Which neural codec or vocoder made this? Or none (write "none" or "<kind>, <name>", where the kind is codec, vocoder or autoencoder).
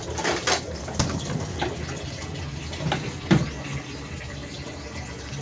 none